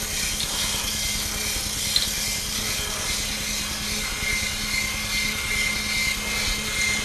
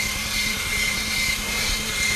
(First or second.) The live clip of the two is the first